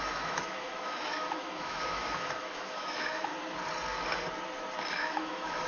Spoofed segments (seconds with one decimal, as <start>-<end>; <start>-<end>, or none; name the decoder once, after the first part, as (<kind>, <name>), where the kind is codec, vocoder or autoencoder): 0.0-3.3 (autoencoder, DAC-VAE); 4.9-5.7